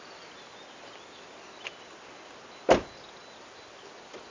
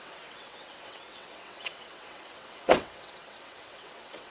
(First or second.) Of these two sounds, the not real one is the second